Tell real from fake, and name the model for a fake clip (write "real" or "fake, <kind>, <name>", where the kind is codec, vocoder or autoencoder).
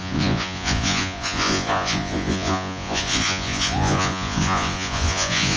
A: fake, vocoder, Vocos